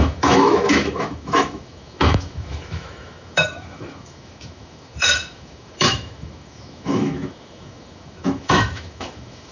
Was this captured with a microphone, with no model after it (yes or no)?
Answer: no